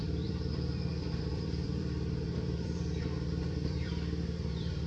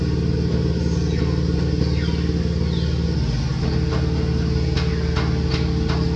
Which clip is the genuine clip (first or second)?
second